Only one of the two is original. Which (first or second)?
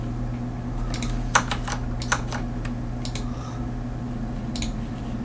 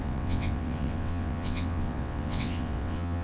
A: first